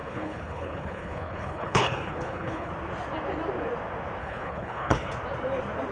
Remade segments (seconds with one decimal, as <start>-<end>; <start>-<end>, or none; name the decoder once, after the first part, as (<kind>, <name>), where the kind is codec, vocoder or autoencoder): 0.0-2.7 (codec, HILCodec); 4.2-5.1